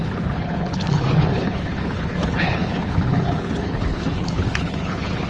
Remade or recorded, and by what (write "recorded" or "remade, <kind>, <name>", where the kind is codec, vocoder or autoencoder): remade, codec, HILCodec